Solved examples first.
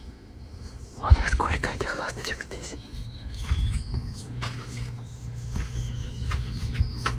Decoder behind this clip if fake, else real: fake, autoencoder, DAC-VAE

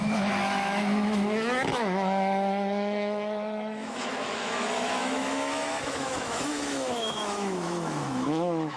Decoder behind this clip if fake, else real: fake, autoencoder, DAC-VAE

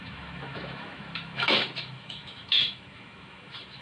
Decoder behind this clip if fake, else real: fake, autoencoder, DAC-VAE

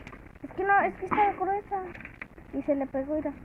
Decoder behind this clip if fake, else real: real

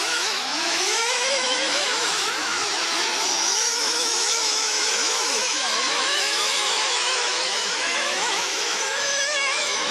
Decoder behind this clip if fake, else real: fake, autoencoder, DAC-VAE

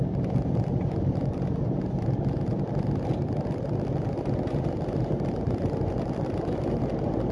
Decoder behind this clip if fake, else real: real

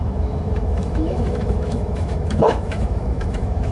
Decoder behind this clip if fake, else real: fake, autoencoder, DAC-VAE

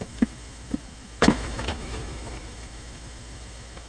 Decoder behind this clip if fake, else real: fake, autoencoder, DAC-VAE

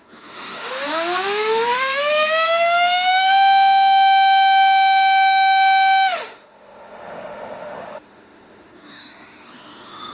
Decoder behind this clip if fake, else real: fake, autoencoder, DAC-VAE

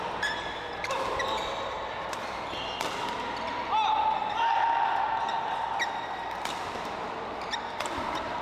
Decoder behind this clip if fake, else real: real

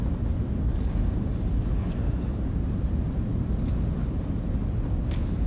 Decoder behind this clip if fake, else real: real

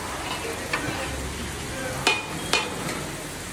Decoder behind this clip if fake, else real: real